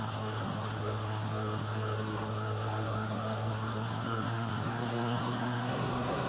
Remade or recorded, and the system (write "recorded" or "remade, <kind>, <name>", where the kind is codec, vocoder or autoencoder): remade, codec, SNAC